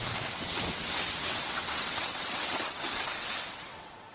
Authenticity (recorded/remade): remade